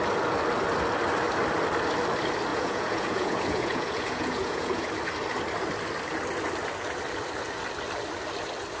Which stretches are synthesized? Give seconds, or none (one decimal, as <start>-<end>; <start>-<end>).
2.5-4.9

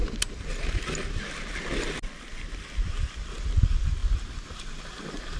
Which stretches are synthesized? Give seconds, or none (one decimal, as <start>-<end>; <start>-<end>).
none